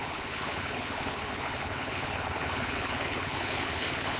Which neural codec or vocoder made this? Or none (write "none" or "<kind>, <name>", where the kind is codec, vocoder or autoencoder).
codec, HILCodec